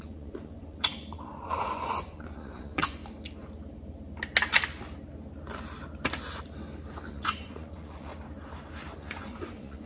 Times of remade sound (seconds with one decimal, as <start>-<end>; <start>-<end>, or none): 0.0-3.0; 7.1-8.1; 9.0-9.8